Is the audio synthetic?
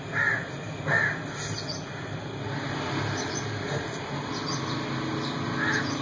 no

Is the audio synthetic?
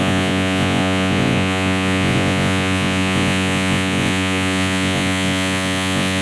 yes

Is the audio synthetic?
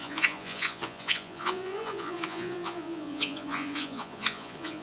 yes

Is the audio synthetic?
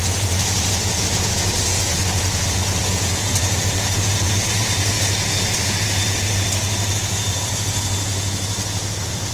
yes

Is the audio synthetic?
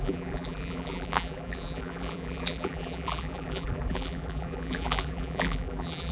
yes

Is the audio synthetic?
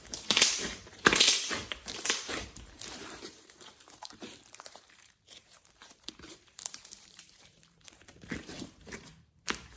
yes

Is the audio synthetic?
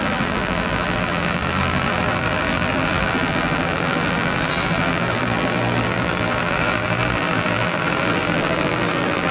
yes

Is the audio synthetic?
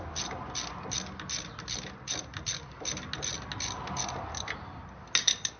no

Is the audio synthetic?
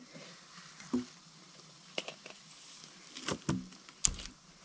no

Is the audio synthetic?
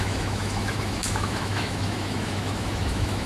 yes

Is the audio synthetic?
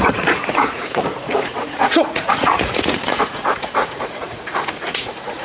yes